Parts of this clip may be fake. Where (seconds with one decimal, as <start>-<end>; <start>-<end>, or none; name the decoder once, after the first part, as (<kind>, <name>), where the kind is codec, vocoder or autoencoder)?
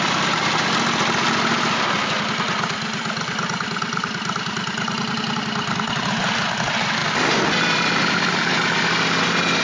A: none